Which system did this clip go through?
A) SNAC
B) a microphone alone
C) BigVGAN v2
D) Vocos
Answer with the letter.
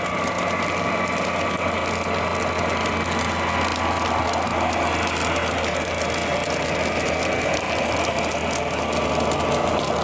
B